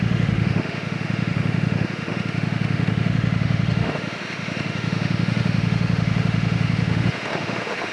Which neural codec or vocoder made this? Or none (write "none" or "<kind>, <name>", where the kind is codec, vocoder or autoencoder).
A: autoencoder, DAC-VAE